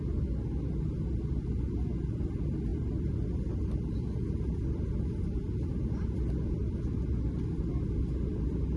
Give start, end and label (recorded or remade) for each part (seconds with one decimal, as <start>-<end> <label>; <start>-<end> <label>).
0.0-8.8 recorded